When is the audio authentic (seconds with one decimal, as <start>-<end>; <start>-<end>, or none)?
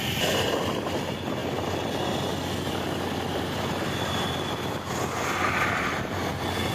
0.0-6.7